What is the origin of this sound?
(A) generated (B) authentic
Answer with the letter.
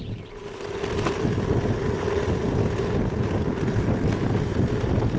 B